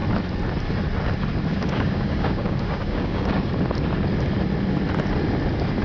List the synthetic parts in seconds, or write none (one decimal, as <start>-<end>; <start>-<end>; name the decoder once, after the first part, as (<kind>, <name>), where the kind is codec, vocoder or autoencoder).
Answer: 1.5-3.5 (codec, DAC)